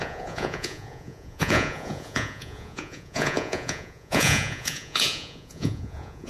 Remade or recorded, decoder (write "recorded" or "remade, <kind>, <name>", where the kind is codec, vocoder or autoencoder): remade, vocoder, Vocos